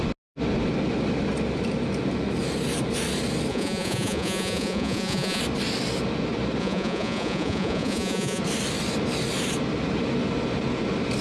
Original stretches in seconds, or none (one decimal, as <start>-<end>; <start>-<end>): 0.0-3.5; 5.4-6.6; 8.4-11.2